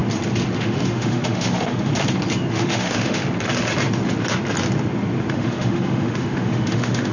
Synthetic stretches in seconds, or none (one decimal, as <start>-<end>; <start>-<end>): 0.6-1.9; 2.5-3.2; 5.3-7.1